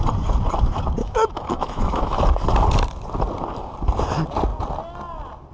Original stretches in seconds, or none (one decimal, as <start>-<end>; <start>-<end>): 0.0-1.0; 2.2-5.5